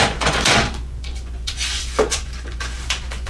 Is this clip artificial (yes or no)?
yes